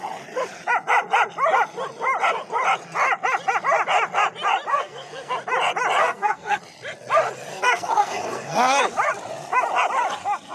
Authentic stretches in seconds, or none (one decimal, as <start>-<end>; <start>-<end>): 0.0-4.7; 5.3-6.0; 6.6-7.5; 8.8-10.5